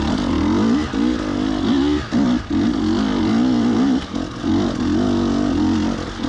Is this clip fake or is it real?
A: real